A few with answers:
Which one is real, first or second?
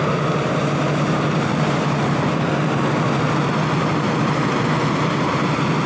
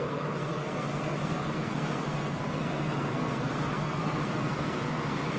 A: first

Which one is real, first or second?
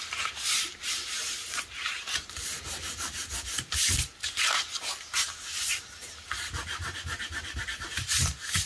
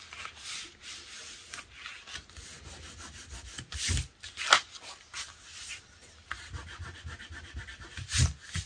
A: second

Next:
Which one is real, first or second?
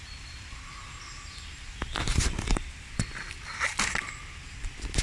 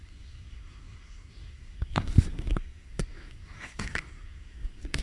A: first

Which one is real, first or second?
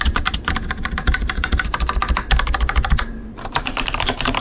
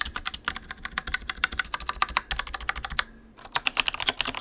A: second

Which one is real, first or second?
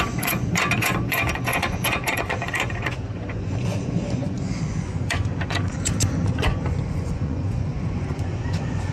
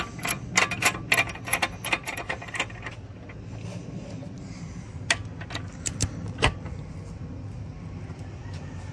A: second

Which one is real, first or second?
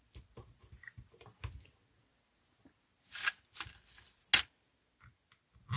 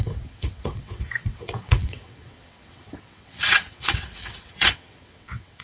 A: first